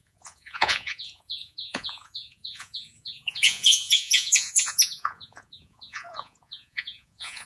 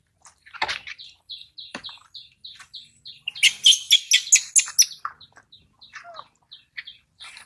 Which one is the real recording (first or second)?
second